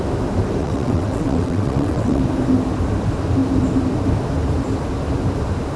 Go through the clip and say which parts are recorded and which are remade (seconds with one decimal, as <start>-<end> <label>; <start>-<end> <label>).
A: 0.0-0.6 recorded; 0.6-2.2 remade; 2.2-5.8 recorded